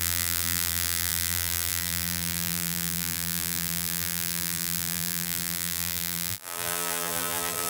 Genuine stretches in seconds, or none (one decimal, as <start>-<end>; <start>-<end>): none